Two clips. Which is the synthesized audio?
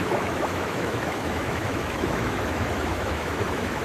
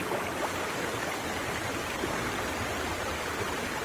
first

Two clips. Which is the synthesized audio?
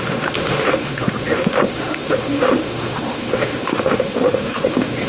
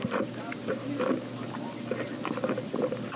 first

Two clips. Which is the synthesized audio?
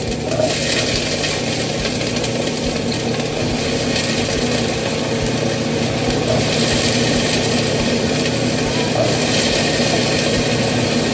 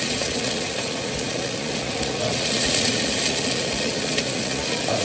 second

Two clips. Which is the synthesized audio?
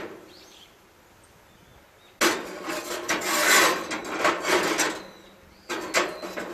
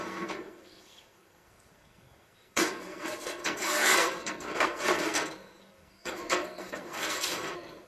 second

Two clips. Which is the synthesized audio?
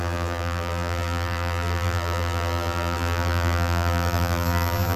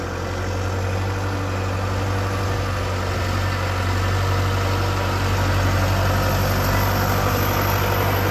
first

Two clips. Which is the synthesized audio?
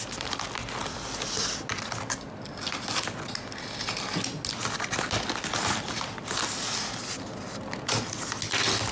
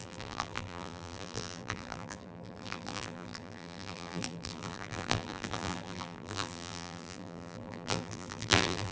second